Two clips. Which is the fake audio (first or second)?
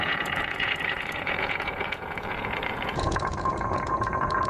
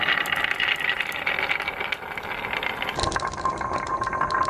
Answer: first